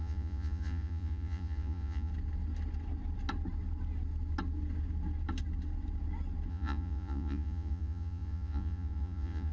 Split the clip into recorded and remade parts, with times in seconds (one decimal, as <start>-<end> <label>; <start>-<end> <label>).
0.0-2.1 remade; 2.1-6.5 recorded; 6.5-9.5 remade

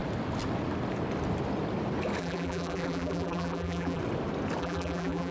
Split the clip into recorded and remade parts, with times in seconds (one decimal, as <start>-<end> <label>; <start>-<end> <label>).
0.0-2.2 recorded; 2.2-4.0 remade; 4.0-4.6 recorded; 4.6-5.3 remade

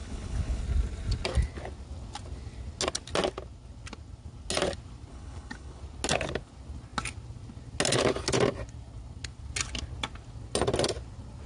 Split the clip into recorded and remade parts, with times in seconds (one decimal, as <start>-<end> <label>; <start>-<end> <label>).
0.0-0.6 remade; 0.6-5.1 recorded; 5.1-5.8 remade; 5.8-11.5 recorded

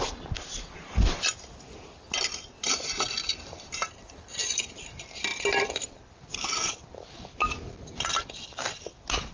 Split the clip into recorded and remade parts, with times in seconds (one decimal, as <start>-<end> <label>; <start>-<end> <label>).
0.0-5.3 recorded; 5.3-8.3 remade; 8.3-9.3 recorded

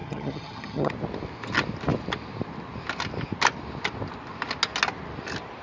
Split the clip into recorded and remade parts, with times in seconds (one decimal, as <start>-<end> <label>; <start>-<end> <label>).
0.0-0.9 remade; 0.9-5.6 recorded